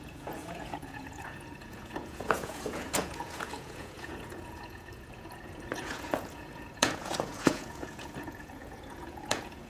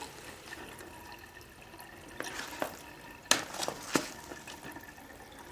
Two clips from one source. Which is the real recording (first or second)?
second